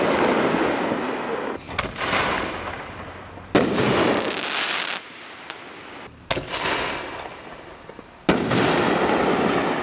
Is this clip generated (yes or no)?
no